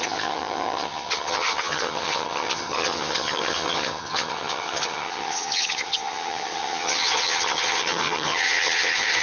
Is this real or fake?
fake